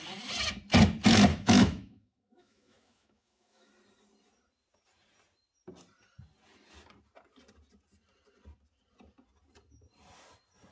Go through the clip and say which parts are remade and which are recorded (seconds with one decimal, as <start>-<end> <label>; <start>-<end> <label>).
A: 0.0-1.3 recorded; 1.3-3.7 remade; 3.7-10.7 recorded